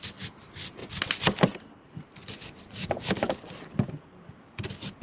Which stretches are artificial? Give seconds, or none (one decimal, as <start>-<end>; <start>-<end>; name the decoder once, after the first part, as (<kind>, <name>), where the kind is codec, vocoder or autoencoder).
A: none